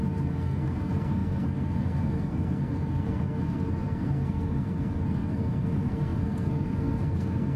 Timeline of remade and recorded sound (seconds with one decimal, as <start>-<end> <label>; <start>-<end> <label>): 0.0-7.6 remade